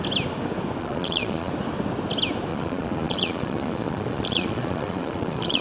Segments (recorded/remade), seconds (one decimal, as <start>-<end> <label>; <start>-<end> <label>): 0.0-0.8 recorded; 0.8-1.5 remade; 1.5-2.5 recorded; 2.5-5.6 remade